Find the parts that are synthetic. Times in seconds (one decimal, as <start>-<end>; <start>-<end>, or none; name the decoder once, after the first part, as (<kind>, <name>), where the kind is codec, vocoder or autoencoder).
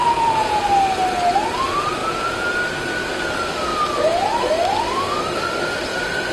0.0-0.6 (vocoder, Vocos); 2.0-2.5